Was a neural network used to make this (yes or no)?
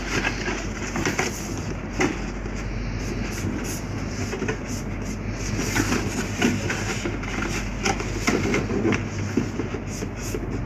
no